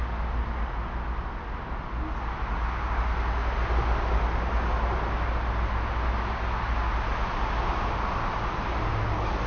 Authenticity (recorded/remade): recorded